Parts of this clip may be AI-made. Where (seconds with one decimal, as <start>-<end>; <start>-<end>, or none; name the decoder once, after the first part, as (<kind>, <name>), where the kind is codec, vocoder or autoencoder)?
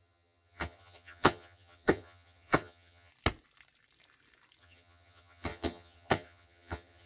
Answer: 0.0-3.1 (vocoder, HiFi-GAN); 4.6-7.1